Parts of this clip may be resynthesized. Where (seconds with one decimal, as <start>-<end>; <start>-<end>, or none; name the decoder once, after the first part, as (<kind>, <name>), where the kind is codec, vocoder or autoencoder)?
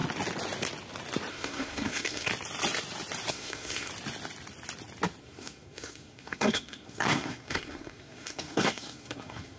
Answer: 1.3-2.3 (codec, SNAC); 3.3-3.9; 5.2-9.6